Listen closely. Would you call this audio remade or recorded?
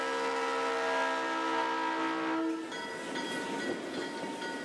recorded